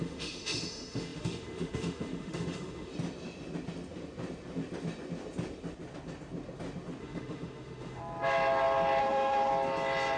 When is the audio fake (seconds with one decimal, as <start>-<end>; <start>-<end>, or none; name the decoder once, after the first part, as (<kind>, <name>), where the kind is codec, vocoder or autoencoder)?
0.0-2.9 (autoencoder, DAC-VAE); 7.0-8.0; 9.0-9.5

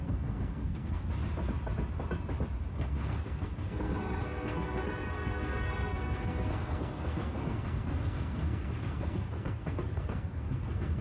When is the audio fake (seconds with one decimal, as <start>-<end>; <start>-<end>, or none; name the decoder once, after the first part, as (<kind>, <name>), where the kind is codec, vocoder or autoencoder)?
0.0-1.0 (codec, SNAC); 2.7-11.0

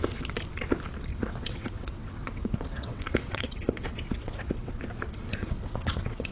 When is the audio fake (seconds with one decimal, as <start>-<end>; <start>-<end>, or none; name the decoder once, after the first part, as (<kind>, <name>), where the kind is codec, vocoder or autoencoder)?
1.1-4.8 (vocoder, WaveNeXt); 5.4-6.3

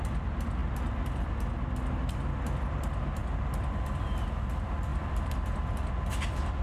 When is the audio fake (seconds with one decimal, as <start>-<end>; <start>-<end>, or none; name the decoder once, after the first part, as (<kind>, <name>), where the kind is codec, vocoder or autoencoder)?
4.9-5.9 (vocoder, BigVGAN v2)